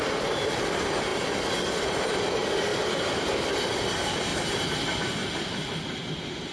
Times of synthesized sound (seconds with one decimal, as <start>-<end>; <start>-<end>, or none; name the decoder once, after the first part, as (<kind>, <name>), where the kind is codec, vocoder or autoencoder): none